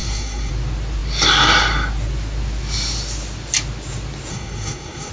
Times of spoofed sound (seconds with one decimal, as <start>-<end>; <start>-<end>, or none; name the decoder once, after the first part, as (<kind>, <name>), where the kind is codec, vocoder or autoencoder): 0.0-0.5 (codec, SNAC); 4.3-5.1